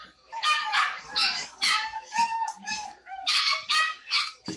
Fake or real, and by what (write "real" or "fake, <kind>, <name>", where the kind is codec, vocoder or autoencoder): fake, codec, DAC